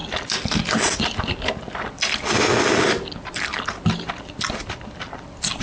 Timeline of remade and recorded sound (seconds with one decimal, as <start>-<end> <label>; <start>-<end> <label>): 0.0-5.6 recorded